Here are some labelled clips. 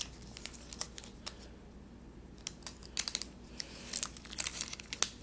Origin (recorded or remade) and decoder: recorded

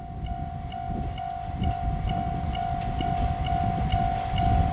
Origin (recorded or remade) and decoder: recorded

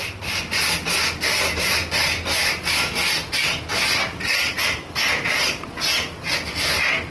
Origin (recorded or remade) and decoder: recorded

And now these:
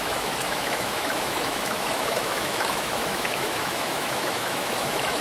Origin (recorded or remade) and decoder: remade, autoencoder, DAC-VAE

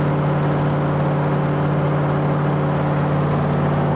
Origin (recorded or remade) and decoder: recorded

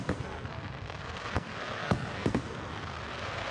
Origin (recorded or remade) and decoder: remade, codec, SNAC